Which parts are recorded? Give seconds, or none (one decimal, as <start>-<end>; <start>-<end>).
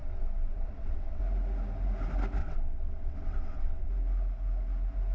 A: 1.2-2.4; 3.9-5.1